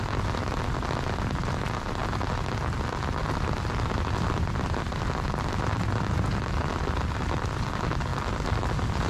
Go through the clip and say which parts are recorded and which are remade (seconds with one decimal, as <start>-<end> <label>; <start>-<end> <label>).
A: 0.0-9.1 recorded